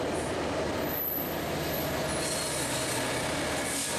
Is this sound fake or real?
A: real